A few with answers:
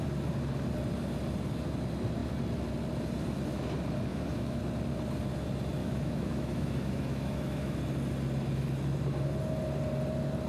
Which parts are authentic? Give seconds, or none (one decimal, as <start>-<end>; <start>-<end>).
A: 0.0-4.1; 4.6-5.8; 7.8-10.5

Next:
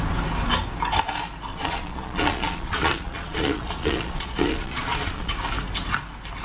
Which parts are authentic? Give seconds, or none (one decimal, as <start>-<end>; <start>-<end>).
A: 0.0-1.5; 5.3-6.4

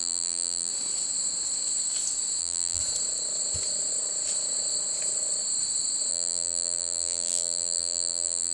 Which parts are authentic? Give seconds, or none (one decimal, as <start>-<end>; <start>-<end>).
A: 0.7-2.4; 2.8-6.1

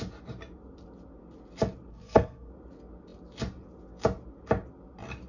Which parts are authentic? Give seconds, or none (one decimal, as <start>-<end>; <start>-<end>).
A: 0.0-1.9; 2.5-5.3

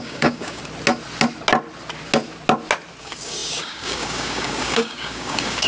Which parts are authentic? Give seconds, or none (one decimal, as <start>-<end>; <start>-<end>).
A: 0.6-3.0

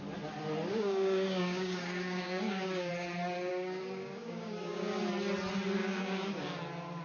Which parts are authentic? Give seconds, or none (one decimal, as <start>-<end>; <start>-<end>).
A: 0.0-0.7; 2.9-3.5; 5.0-5.8; 6.6-7.0